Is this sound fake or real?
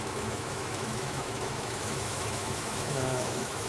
fake